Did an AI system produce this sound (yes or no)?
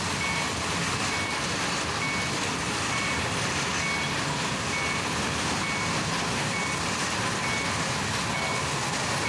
no